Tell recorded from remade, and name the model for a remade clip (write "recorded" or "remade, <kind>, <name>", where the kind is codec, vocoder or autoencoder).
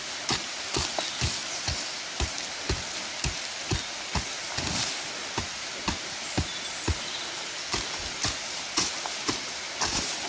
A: recorded